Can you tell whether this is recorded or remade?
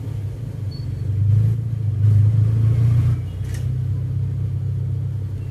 recorded